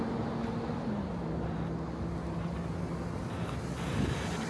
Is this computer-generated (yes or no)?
no